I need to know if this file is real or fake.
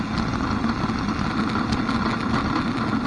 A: real